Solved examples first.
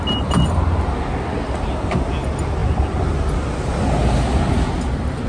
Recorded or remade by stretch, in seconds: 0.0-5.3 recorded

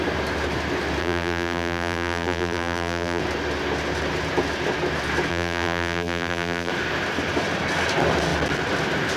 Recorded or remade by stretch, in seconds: 0.0-1.0 recorded; 1.0-3.2 remade; 3.2-5.3 recorded; 5.3-6.7 remade; 6.7-9.2 recorded

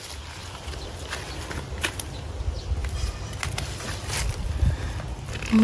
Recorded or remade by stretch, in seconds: 0.0-0.4 recorded; 0.4-1.2 remade; 1.2-2.8 recorded; 2.8-4.6 remade; 4.6-5.6 recorded

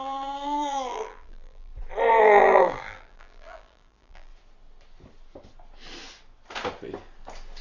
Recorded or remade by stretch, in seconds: 0.0-1.7 remade; 1.7-2.2 recorded; 2.2-4.3 remade; 4.3-7.6 recorded

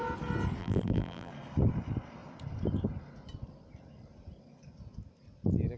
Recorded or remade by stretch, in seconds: 0.0-0.6 recorded; 0.6-1.3 remade; 1.3-5.8 recorded

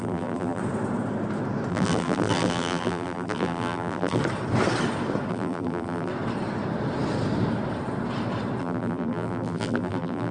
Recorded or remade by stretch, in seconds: 0.0-0.6 remade; 0.6-1.7 recorded; 1.7-4.2 remade; 4.2-5.3 recorded; 5.3-6.1 remade; 6.1-8.6 recorded; 8.6-10.3 remade